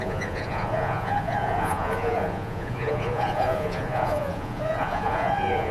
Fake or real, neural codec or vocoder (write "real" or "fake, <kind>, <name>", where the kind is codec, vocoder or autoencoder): fake, vocoder, Vocos